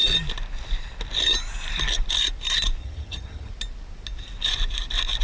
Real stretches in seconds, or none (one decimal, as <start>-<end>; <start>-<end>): 0.0-2.8; 3.5-5.2